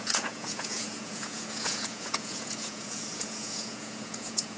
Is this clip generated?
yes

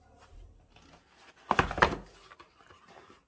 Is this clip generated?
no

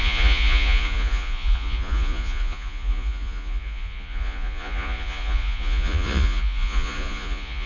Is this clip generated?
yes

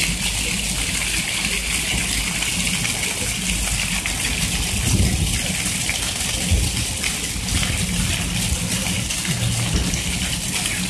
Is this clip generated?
no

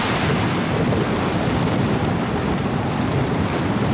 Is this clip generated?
no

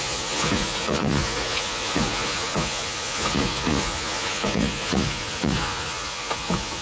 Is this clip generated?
yes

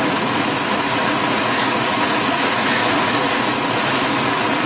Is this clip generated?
yes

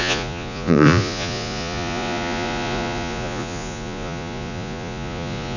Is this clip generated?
yes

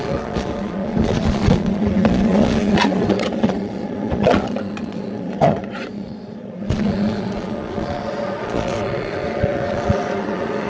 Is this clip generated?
yes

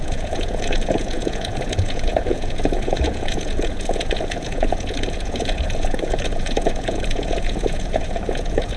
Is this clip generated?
yes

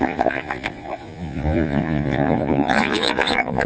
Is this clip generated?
yes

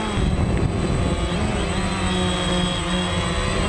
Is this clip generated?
no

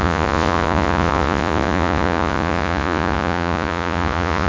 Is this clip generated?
yes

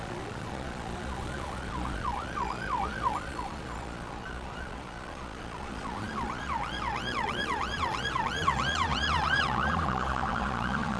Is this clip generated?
yes